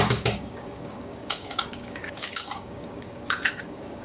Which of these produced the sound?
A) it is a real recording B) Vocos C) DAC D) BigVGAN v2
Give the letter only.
C